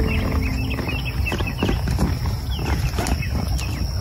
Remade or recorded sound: recorded